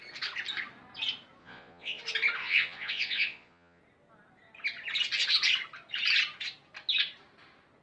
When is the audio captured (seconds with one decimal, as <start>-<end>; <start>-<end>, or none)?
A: 0.0-1.4; 2.0-2.4; 3.8-7.8